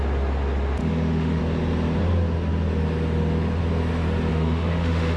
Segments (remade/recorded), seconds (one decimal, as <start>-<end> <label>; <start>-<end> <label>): 0.0-0.8 recorded; 0.8-1.4 remade; 1.4-4.3 recorded; 4.3-5.2 remade